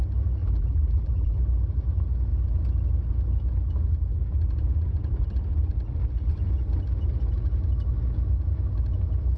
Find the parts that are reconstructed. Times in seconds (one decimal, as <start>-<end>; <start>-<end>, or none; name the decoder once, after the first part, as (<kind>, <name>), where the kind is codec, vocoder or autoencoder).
0.4-1.4 (vocoder, BigVGAN v2)